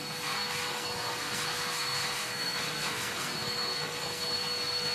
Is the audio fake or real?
fake